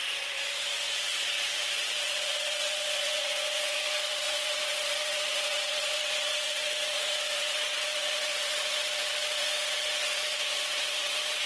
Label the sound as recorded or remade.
remade